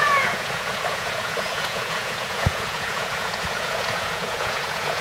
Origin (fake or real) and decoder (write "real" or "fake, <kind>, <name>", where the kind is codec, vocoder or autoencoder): fake, vocoder, Vocos